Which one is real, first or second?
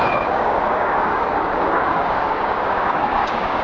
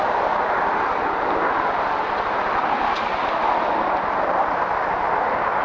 second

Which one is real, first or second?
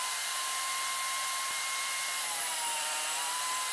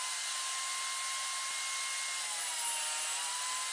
second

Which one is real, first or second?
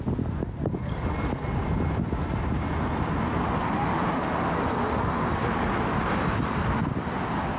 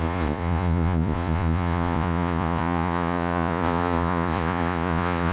first